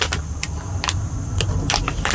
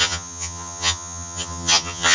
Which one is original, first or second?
first